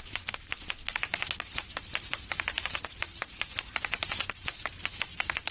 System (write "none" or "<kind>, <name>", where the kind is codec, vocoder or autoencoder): vocoder, BigVGAN v2